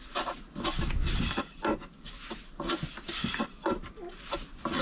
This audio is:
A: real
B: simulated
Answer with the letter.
A